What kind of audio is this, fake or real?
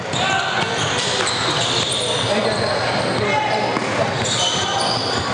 real